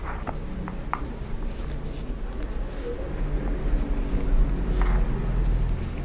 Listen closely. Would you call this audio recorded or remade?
recorded